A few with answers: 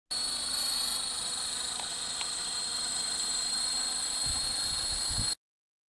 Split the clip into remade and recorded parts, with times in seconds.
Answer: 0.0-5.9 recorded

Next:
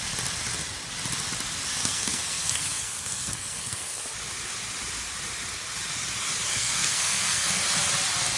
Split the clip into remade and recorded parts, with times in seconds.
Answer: 0.0-1.8 recorded; 1.8-4.0 remade; 4.0-6.5 recorded; 6.5-7.6 remade; 7.6-8.4 recorded

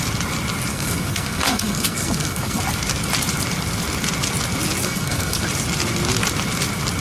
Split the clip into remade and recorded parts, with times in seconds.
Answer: 0.0-0.7 recorded; 0.7-2.6 remade; 2.6-4.8 recorded; 4.8-5.4 remade; 5.4-7.0 recorded

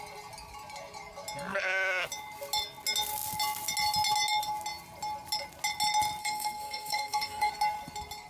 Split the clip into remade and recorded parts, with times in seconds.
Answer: 0.0-6.2 recorded; 6.2-7.5 remade; 7.5-8.3 recorded

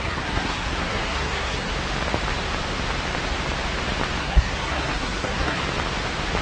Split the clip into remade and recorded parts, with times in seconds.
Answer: 0.0-1.7 remade; 1.7-4.2 recorded; 4.2-5.6 remade; 5.6-6.4 recorded